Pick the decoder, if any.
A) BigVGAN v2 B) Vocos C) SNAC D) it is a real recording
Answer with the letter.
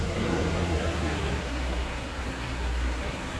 C